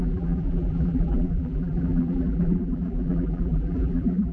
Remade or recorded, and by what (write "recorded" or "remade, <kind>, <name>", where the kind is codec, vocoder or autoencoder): remade, vocoder, BigVGAN v2